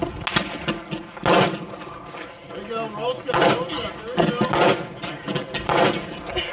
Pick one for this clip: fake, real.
real